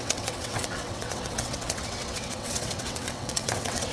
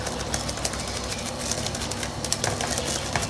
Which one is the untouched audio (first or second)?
second